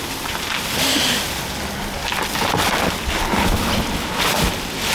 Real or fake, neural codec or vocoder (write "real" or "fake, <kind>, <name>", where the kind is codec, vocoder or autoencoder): real